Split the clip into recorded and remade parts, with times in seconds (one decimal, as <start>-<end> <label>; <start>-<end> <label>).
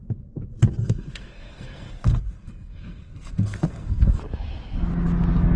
0.0-0.8 recorded; 0.8-4.2 remade; 4.2-5.6 recorded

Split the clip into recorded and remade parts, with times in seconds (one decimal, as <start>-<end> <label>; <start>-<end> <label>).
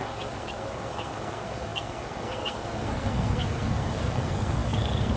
0.0-5.2 remade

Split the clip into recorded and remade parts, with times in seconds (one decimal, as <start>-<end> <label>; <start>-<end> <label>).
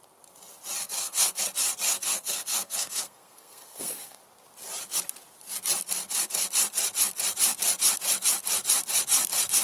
0.0-0.8 recorded; 0.8-1.4 remade; 1.4-1.9 recorded; 1.9-4.2 remade; 4.2-9.6 recorded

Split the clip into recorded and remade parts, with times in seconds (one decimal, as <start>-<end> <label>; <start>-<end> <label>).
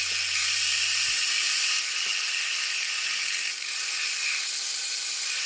0.0-5.5 recorded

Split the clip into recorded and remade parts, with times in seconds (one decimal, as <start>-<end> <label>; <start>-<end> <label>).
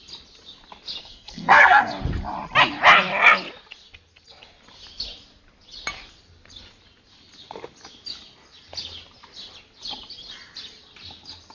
0.0-1.0 recorded; 1.0-2.0 remade; 2.0-11.5 recorded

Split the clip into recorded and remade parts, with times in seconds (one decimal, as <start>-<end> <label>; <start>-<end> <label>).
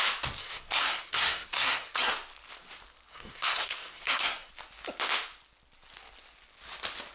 0.0-0.4 recorded; 0.4-2.1 remade; 2.1-3.1 recorded; 3.1-4.5 remade; 4.5-7.1 recorded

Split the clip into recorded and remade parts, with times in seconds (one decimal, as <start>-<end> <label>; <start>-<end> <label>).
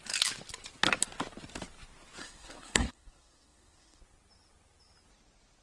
0.0-2.2 recorded; 2.2-4.0 remade; 4.0-5.6 recorded